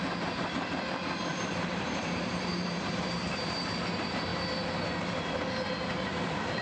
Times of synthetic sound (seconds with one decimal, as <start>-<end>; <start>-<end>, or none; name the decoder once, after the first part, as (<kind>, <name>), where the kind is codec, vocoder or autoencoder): 1.3-3.2 (vocoder, BigVGAN v2)